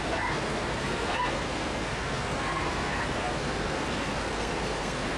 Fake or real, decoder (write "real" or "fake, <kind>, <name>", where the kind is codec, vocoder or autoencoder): fake, codec, SNAC